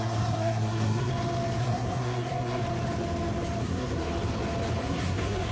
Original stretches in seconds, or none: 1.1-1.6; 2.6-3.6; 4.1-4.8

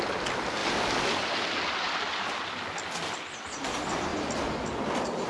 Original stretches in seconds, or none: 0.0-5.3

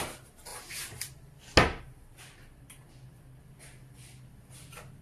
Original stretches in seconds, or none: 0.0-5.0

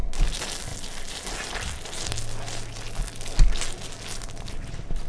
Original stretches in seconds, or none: 0.0-5.1

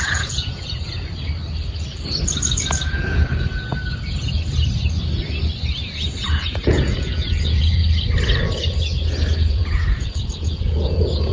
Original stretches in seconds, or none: 1.1-6.1; 7.8-9.5

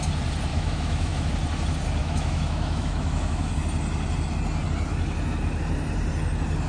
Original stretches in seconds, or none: 0.0-0.5; 1.3-2.0; 3.5-6.7

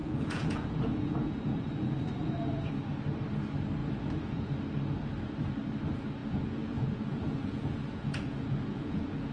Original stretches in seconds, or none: 2.7-3.8; 4.5-6.2